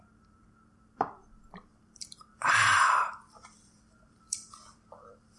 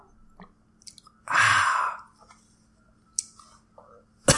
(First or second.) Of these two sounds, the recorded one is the second